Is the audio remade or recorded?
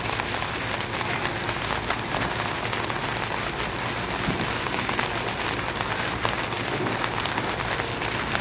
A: recorded